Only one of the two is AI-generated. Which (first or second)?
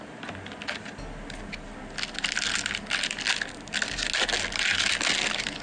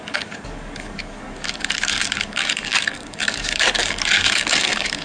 second